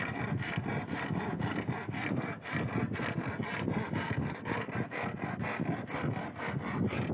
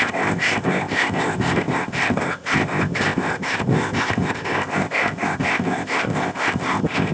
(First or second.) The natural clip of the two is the first